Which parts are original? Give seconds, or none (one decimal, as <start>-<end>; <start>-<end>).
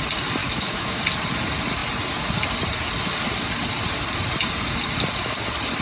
0.0-0.4; 1.0-5.8